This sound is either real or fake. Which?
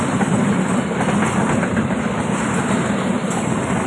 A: real